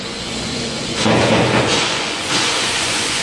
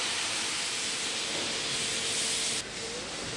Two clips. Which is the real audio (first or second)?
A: second